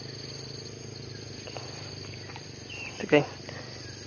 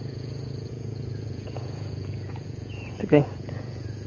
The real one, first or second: first